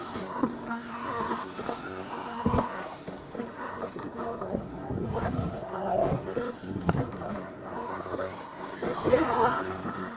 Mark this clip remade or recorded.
remade